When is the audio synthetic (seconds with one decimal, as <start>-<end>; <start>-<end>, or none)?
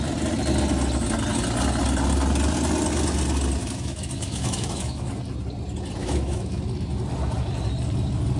3.6-5.1; 6.0-6.6